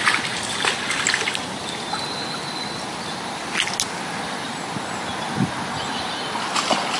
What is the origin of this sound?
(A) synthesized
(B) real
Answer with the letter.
B